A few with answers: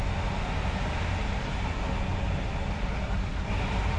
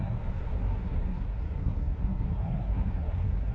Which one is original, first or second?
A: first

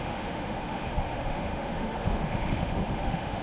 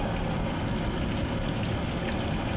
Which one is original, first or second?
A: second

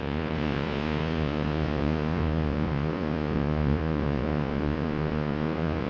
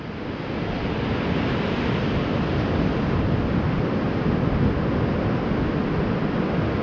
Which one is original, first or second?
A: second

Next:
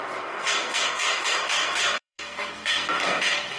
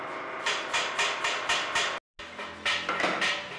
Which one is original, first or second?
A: second